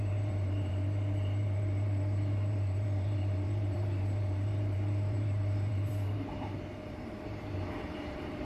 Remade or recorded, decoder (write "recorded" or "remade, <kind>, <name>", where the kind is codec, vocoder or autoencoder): remade, vocoder, BigVGAN v2